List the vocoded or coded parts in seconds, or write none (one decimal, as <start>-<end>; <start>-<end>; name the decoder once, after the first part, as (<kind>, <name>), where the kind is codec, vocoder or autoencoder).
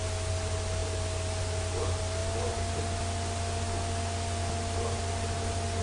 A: none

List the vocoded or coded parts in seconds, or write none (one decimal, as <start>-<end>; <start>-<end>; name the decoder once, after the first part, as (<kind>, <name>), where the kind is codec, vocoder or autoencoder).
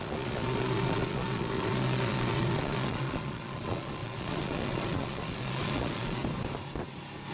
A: 0.0-6.2 (vocoder, Vocos)